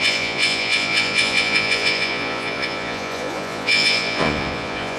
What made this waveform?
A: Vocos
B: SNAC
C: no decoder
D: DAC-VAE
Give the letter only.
A